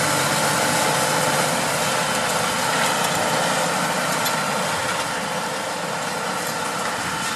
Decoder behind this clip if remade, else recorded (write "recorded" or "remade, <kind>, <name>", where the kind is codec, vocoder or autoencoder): recorded